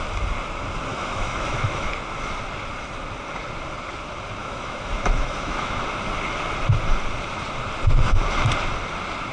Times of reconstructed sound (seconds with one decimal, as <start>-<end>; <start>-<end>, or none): 0.9-1.9; 4.4-5.8